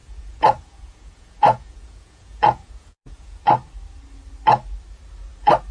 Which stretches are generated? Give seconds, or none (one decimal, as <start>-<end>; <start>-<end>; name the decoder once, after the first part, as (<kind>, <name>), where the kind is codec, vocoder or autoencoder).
0.0-3.4 (vocoder, Vocos)